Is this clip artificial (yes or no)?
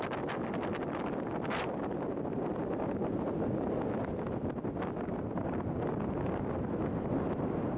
no